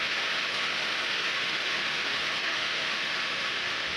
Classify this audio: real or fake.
fake